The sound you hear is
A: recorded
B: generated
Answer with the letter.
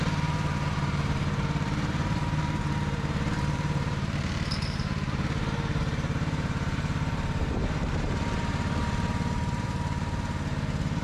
B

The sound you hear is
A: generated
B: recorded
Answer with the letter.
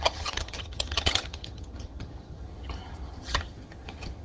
A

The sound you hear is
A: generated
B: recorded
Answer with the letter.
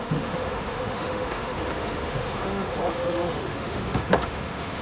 A